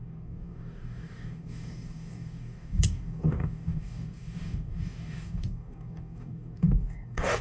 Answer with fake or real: fake